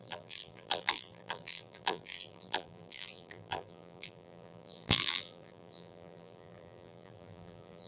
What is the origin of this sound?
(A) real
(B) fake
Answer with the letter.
B